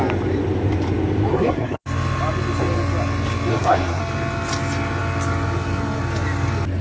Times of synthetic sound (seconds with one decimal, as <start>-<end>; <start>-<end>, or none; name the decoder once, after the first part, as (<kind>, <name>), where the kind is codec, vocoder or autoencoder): 1.3-1.8 (codec, SNAC); 3.5-4.0